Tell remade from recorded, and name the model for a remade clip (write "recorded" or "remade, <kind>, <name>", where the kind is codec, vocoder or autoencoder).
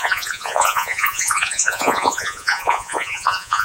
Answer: remade, vocoder, Vocos